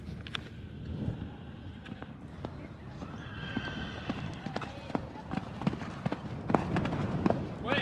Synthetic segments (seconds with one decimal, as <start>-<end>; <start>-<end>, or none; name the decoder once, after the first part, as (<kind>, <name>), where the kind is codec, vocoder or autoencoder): none